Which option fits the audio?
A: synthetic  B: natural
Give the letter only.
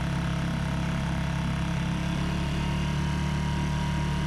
B